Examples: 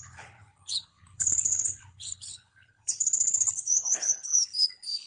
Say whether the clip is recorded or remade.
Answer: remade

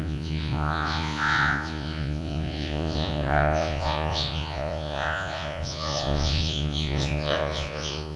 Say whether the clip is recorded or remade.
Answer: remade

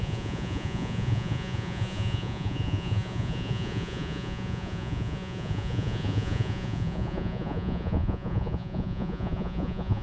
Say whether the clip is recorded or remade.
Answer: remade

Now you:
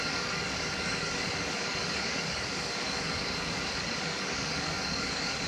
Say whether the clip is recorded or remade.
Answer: remade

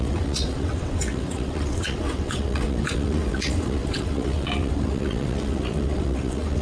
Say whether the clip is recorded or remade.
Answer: remade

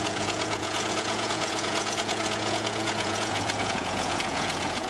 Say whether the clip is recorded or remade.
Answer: remade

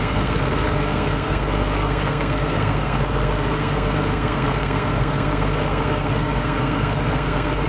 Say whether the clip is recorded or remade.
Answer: remade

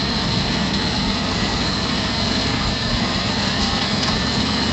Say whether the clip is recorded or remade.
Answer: remade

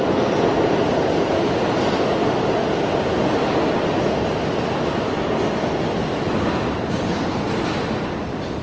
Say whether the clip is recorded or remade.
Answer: recorded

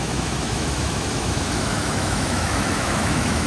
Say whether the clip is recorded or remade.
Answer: remade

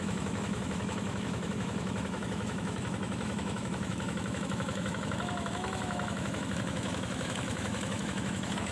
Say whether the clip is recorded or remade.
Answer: remade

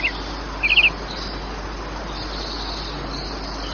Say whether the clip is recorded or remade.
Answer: recorded